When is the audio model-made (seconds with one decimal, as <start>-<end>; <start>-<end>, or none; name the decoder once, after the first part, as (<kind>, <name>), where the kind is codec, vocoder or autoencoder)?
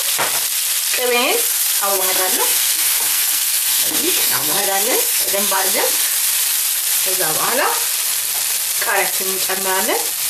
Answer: 1.9-5.9 (codec, SNAC)